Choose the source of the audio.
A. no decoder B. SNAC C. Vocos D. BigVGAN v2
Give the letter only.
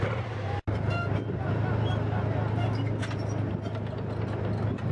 A